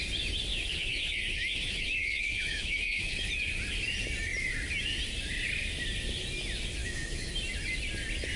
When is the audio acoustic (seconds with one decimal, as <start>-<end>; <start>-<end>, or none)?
0.0-0.5; 3.3-6.8; 7.3-8.4